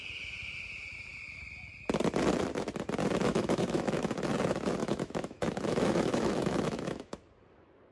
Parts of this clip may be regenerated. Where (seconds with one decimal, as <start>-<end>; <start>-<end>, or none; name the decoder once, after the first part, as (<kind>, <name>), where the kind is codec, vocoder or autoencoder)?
3.3-4.1 (autoencoder, DAC-VAE); 4.8-7.2

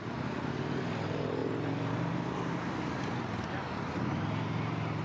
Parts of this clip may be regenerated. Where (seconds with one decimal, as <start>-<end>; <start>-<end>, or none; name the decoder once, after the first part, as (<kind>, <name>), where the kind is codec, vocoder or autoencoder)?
0.0-5.0 (vocoder, BigVGAN v2)

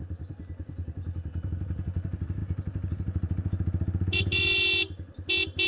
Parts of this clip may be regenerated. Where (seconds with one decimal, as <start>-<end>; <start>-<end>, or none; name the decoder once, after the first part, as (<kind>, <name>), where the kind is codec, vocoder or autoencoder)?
none

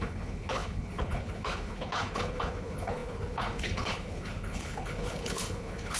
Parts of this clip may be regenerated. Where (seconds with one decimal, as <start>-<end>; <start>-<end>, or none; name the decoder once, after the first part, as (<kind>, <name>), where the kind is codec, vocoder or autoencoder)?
0.0-6.0 (codec, HILCodec)

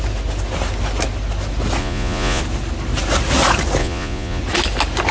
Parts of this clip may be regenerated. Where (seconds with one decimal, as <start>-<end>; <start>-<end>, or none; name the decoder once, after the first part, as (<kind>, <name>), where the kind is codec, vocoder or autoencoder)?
1.8-2.4 (vocoder, Vocos); 3.8-4.4

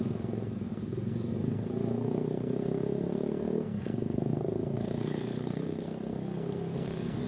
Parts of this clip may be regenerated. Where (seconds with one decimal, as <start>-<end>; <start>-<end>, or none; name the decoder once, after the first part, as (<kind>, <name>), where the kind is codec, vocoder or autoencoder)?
0.0-7.3 (codec, SNAC)

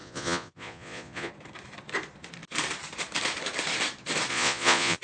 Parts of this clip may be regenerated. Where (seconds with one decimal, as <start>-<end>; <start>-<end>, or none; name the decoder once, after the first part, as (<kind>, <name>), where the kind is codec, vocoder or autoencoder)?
0.0-1.3 (vocoder, Vocos); 4.3-5.0

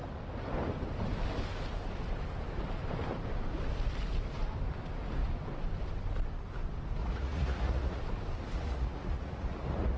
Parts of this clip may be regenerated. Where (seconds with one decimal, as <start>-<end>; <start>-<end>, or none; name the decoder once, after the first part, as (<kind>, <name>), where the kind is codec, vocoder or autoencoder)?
7.0-8.0 (vocoder, Vocos); 8.5-10.0